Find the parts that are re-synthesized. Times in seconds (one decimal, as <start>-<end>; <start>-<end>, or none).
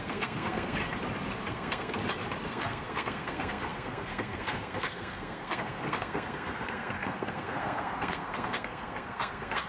0.0-0.8; 1.5-2.0; 2.5-9.7